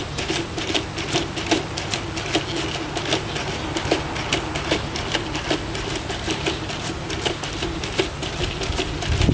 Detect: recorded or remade recorded